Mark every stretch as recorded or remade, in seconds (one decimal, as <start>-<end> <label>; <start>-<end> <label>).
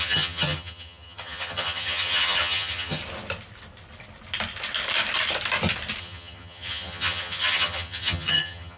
0.0-3.0 remade; 3.0-6.0 recorded; 6.0-8.8 remade